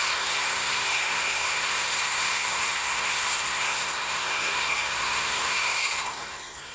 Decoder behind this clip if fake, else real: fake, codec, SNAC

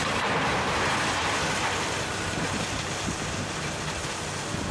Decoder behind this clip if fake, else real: real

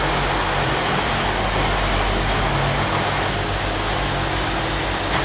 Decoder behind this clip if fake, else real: real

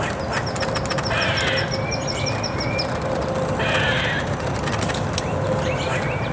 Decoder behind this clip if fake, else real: real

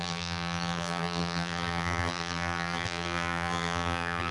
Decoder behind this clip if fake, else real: fake, vocoder, BigVGAN v2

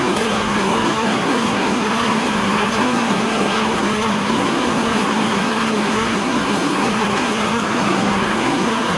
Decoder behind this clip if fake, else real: fake, codec, SNAC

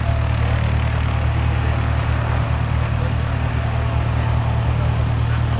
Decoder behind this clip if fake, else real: real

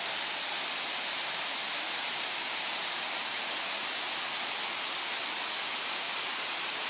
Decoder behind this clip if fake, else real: real